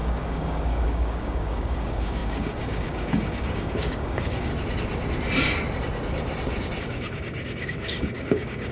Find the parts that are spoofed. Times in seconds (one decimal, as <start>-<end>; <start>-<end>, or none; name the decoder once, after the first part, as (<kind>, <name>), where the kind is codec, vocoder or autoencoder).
0.0-4.5 (codec, DAC); 6.8-8.7